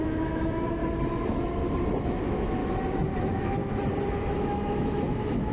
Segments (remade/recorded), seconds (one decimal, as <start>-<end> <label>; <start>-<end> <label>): 0.0-0.8 remade; 0.8-2.1 recorded; 2.1-2.6 remade; 2.6-3.2 recorded; 3.2-3.6 remade; 3.6-4.3 recorded; 4.3-5.5 remade